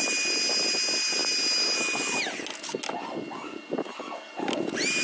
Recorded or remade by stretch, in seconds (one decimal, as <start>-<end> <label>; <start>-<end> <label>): 0.0-5.0 recorded